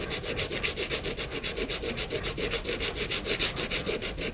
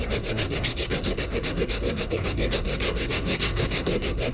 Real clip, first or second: first